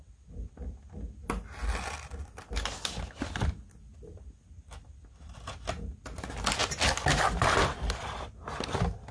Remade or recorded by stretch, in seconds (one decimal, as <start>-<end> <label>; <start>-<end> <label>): 0.0-9.1 recorded